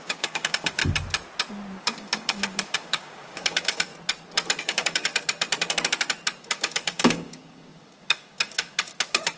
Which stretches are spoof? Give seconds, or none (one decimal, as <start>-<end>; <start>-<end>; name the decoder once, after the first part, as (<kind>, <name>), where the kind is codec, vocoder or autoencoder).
0.0-0.8 (codec, DAC); 1.8-3.9; 4.6-5.1; 6.4-9.4